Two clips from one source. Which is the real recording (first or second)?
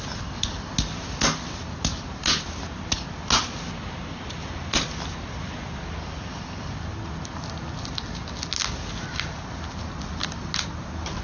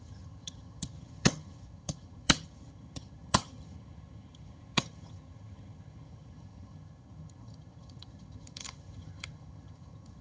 first